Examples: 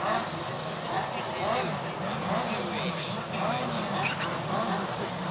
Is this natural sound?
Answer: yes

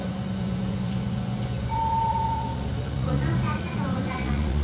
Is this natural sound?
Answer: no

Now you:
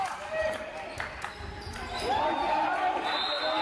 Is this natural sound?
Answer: yes